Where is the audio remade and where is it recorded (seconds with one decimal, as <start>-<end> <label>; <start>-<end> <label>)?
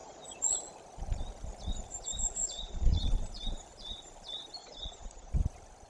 0.0-0.6 remade; 0.6-2.4 recorded; 2.4-3.0 remade; 3.0-4.6 recorded; 4.6-5.3 remade; 5.3-5.9 recorded